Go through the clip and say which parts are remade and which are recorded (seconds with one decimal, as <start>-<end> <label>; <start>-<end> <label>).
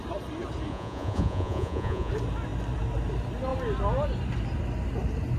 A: 0.0-0.7 recorded; 0.7-2.1 remade; 2.1-5.4 recorded